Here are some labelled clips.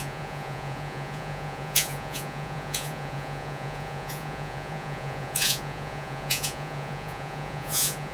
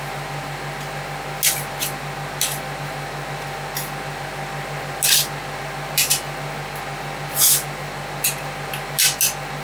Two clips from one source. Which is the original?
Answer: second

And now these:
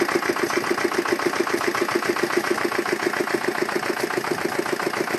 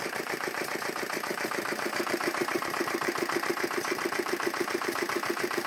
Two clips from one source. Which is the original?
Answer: first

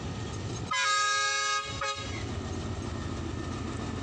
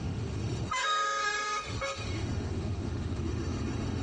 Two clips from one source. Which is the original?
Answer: first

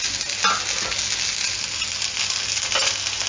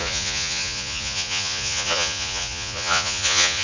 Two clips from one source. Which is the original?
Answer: first